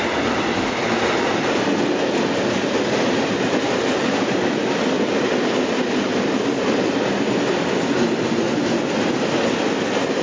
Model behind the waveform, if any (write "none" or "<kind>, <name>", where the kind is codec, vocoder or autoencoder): none